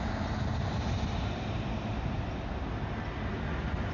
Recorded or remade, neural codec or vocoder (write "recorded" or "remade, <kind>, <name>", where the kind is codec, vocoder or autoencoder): recorded